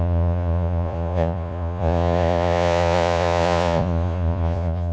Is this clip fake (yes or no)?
yes